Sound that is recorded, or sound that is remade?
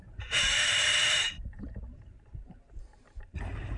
remade